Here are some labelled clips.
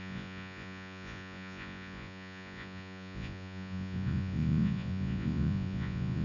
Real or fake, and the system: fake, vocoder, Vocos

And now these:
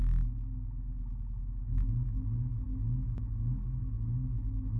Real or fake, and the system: fake, autoencoder, DAC-VAE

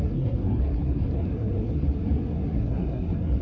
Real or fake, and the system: fake, codec, SNAC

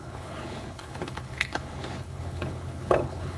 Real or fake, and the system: fake, codec, HILCodec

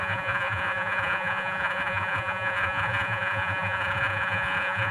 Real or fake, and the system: fake, vocoder, Vocos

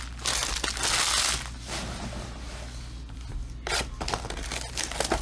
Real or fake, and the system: real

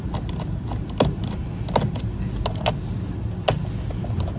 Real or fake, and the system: real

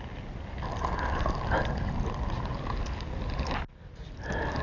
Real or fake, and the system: real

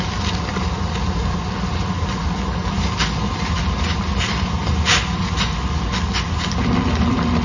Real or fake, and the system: real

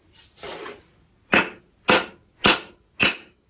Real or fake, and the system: real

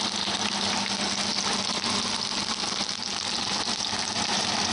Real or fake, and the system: real